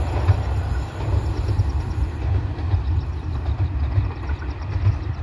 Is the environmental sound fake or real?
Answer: real